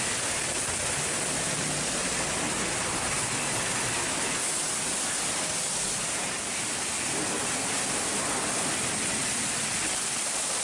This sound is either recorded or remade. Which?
recorded